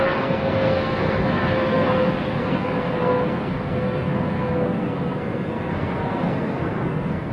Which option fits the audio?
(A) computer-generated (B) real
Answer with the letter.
A